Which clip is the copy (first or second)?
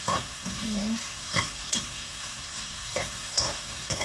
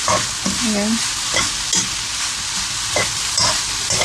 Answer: first